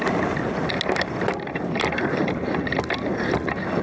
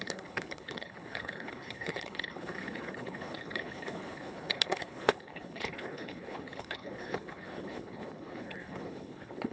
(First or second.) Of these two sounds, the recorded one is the first